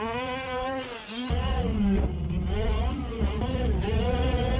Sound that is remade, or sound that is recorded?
remade